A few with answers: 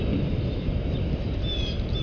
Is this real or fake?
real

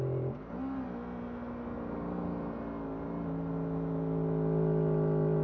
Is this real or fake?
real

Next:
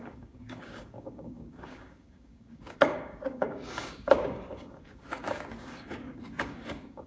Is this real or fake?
fake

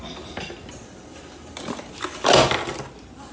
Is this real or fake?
real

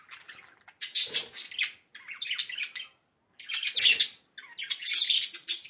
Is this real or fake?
real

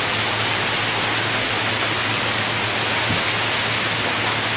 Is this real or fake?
real